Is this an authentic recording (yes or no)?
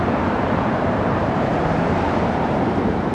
no